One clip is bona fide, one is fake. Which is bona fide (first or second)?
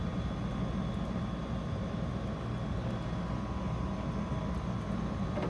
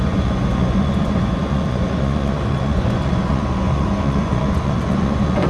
first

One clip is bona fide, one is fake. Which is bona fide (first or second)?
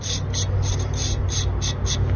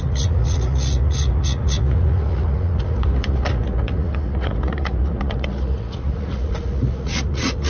first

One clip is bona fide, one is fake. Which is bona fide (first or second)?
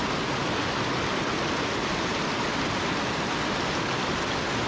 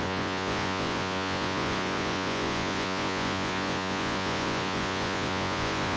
first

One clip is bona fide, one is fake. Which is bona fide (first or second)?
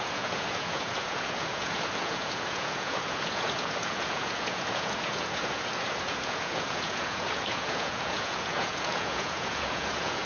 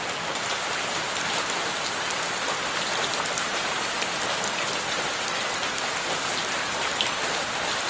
second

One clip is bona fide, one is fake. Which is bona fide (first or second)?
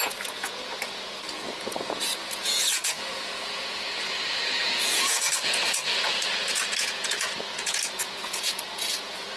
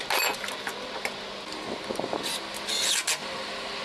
second